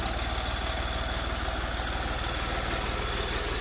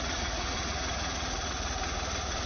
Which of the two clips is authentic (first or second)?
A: first